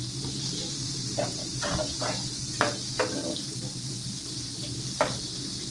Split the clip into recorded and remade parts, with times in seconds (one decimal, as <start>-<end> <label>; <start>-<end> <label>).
0.0-5.7 recorded